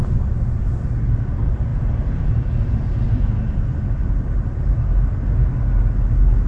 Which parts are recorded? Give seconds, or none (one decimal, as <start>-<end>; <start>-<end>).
0.0-1.7; 2.3-6.5